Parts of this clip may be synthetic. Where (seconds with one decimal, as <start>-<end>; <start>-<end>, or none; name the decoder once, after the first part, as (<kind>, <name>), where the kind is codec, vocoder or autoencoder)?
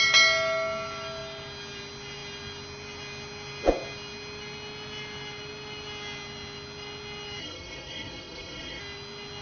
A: 7.4-8.8 (codec, SNAC)